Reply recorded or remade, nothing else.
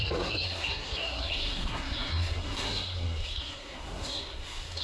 remade